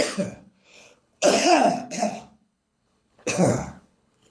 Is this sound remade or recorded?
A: remade